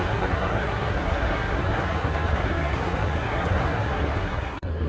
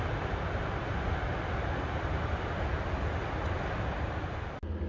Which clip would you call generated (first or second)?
first